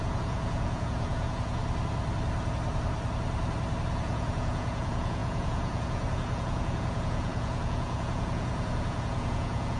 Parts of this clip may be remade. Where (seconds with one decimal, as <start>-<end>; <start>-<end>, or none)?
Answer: 0.0-1.6; 4.0-9.8